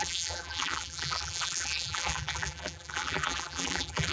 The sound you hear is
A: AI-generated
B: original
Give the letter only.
A